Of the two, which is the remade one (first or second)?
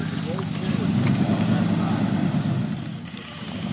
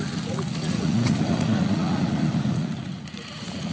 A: second